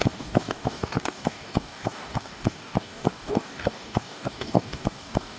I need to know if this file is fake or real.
fake